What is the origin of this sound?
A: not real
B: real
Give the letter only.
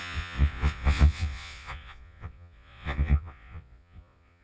A